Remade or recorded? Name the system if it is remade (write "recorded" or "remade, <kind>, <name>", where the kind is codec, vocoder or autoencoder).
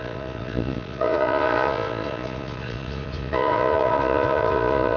remade, vocoder, Vocos